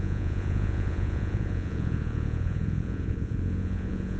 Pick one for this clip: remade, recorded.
remade